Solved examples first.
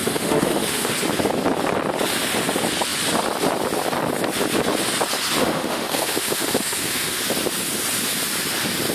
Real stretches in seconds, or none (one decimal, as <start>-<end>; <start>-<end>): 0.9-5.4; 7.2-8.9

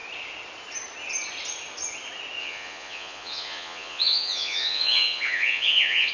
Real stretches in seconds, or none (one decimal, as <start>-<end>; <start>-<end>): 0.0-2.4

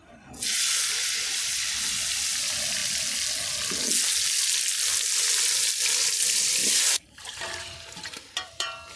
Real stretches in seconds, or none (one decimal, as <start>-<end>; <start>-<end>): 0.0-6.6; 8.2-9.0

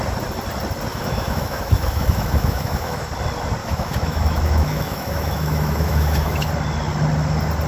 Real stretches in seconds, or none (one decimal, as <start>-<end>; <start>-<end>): 0.0-0.9; 3.1-3.6; 6.5-7.7

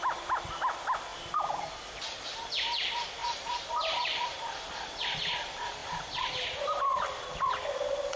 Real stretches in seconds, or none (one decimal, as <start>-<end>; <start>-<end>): 0.0-3.2; 4.6-5.8; 7.4-8.2

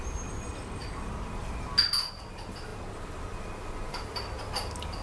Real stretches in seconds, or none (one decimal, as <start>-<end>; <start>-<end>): 0.0-5.0